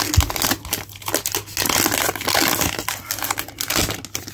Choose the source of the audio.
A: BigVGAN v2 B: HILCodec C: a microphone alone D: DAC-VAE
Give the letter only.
C